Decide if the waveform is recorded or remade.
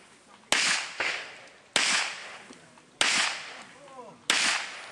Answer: recorded